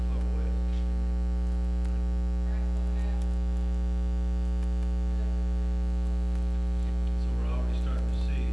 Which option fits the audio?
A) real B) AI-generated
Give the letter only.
A